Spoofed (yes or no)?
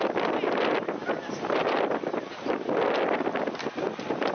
no